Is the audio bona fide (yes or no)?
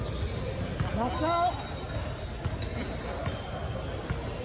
yes